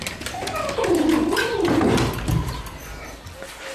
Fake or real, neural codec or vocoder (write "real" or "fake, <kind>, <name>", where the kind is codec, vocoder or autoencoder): real